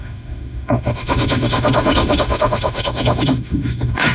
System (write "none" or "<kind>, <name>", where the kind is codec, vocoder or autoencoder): autoencoder, DAC-VAE